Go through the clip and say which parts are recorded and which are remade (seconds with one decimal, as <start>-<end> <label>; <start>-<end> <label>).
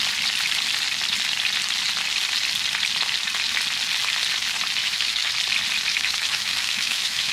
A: 0.0-4.8 recorded; 4.8-5.3 remade; 5.3-5.9 recorded; 5.9-7.3 remade